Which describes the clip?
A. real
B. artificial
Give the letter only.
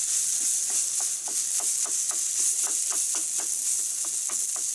A